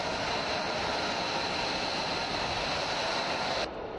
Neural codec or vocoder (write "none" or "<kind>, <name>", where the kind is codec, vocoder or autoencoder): none